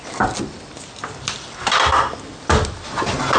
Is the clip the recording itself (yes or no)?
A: no